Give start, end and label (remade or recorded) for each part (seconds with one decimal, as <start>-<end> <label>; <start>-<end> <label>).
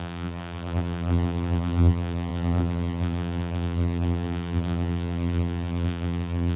0.0-6.6 remade